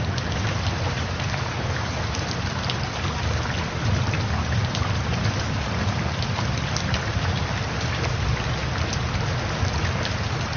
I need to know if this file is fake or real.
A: real